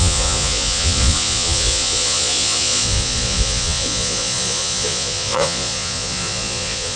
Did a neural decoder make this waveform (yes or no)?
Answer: yes